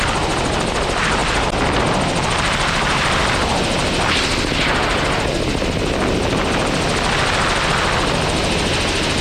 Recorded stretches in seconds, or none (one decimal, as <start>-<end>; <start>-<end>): 0.0-9.2

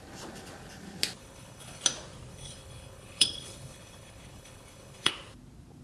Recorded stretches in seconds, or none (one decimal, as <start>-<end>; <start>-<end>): 0.0-1.2; 1.8-2.3; 5.1-5.8

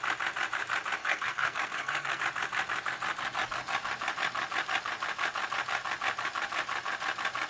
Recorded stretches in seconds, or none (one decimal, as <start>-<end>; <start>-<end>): 0.0-1.0; 2.2-7.5

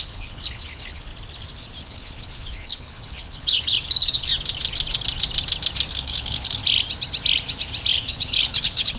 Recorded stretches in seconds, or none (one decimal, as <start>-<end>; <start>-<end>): 1.1-1.8; 4.3-5.9; 6.6-7.9